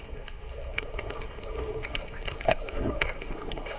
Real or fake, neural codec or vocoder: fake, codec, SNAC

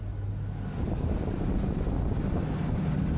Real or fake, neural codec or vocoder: real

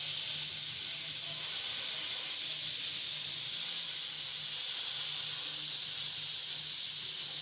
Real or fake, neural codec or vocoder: real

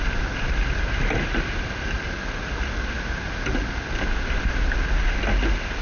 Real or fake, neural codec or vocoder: real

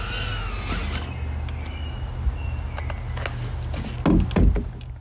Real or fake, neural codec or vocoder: real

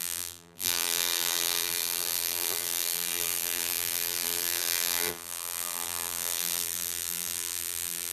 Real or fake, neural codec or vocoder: fake, vocoder, BigVGAN v2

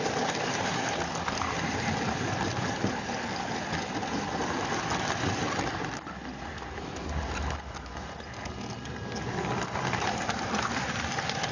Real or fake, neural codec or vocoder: real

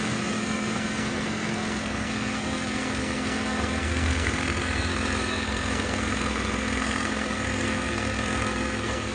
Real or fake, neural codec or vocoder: fake, codec, SNAC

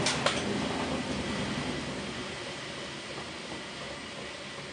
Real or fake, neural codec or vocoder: real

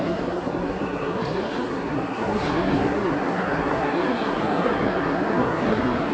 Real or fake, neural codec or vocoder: fake, codec, SNAC